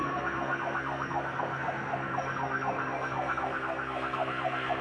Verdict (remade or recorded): remade